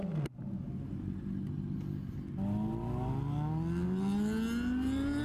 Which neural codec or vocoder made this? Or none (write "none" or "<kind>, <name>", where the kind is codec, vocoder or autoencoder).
none